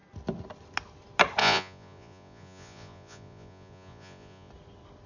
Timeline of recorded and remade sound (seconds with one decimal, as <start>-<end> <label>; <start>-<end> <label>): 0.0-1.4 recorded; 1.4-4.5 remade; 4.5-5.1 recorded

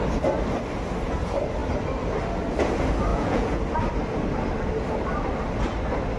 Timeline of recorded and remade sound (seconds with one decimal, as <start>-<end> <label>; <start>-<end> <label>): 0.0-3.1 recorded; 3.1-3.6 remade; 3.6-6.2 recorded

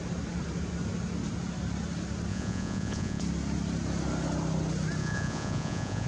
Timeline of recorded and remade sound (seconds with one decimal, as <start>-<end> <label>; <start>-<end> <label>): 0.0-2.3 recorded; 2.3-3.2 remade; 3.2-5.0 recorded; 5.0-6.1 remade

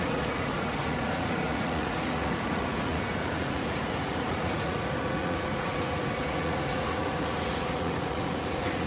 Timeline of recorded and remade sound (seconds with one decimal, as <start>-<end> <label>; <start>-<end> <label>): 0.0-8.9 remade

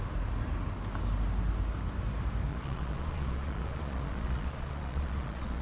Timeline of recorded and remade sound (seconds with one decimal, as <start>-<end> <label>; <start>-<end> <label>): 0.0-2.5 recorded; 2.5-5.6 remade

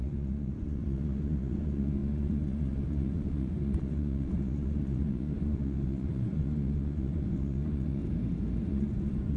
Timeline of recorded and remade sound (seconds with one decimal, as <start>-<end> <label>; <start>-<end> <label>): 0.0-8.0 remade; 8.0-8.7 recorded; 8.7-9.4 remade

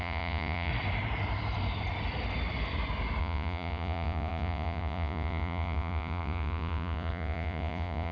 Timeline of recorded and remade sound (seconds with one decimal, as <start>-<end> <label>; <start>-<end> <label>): 0.0-0.7 remade; 0.7-3.2 recorded; 3.2-8.1 remade